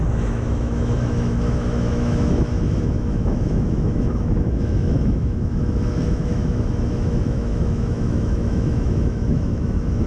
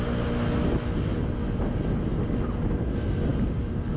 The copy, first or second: first